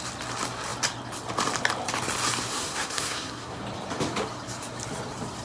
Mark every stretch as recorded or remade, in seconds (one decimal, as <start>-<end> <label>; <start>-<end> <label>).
0.0-2.5 recorded; 2.5-3.6 remade; 3.6-5.4 recorded